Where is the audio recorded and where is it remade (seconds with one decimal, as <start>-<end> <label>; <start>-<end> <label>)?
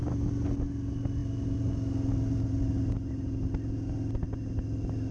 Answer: 0.0-5.1 recorded